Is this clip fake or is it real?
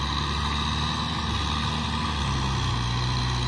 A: real